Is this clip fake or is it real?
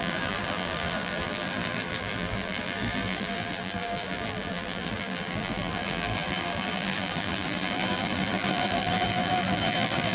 fake